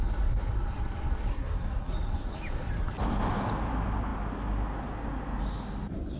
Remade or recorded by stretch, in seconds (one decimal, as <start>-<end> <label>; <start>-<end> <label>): 0.0-1.3 recorded; 1.3-1.9 remade; 1.9-6.2 recorded